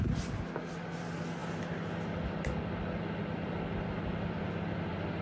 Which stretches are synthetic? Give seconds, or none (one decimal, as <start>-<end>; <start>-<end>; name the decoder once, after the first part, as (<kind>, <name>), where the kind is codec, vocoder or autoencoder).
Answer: none